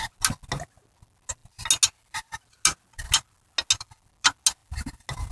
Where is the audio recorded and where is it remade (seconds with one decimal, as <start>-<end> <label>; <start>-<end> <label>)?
0.0-5.3 recorded